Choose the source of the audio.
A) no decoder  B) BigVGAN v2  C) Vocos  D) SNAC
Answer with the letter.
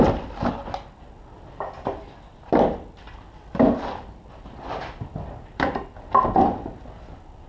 A